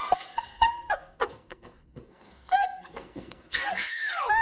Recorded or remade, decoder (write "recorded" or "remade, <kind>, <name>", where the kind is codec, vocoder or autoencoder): remade, codec, SNAC